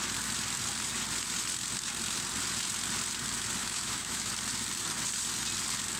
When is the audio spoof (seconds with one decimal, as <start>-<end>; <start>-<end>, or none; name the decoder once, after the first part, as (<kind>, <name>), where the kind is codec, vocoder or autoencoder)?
3.6-4.3 (autoencoder, DAC-VAE)